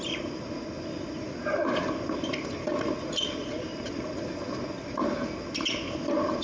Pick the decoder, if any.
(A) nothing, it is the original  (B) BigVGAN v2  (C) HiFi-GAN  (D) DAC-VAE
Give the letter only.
A